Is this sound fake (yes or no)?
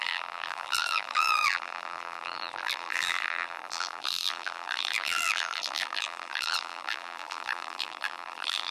yes